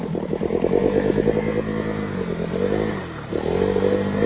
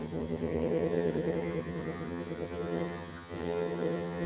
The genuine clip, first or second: first